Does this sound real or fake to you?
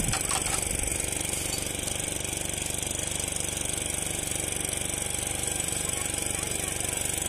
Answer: real